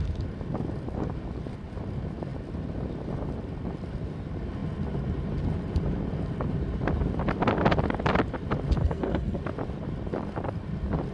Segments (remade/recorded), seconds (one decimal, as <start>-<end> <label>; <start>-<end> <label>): 0.0-8.8 recorded; 8.8-9.4 remade; 9.4-11.1 recorded